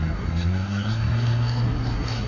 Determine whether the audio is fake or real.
fake